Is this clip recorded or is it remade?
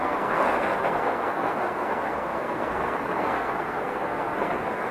remade